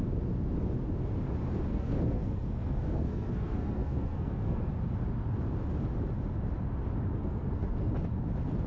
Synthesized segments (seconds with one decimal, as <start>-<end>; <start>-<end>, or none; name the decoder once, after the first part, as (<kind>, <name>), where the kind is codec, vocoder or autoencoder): 1.7-4.7 (codec, SNAC); 7.2-7.9